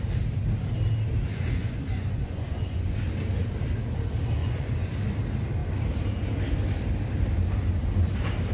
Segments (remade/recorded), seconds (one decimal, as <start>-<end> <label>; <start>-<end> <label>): 0.0-1.3 recorded; 1.3-3.0 remade; 3.0-4.4 recorded; 4.4-4.9 remade; 4.9-8.5 recorded